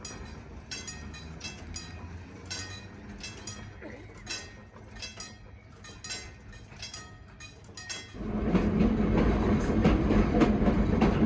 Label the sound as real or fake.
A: real